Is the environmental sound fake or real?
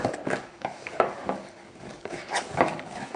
fake